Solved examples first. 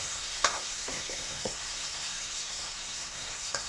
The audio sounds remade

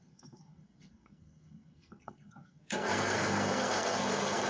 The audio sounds remade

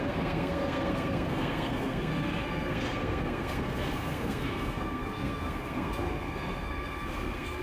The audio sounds remade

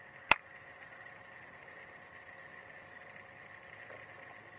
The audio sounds recorded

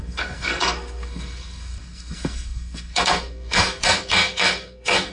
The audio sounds remade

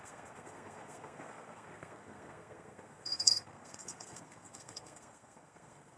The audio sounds remade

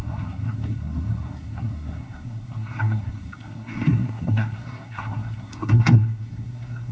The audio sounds remade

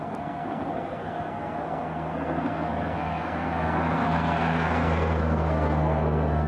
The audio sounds remade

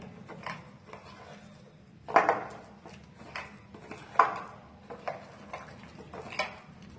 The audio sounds recorded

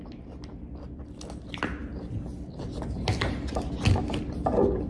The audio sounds recorded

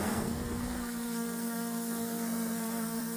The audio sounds remade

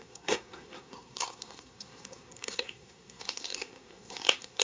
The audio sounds remade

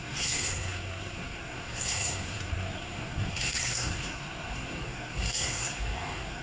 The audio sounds remade